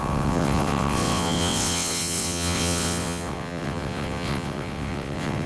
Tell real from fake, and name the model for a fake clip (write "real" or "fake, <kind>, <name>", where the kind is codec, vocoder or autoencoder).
fake, vocoder, WaveNeXt